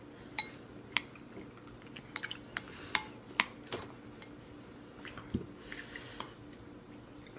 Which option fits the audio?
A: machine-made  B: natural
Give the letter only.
B